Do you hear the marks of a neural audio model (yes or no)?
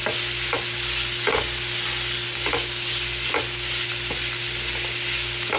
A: no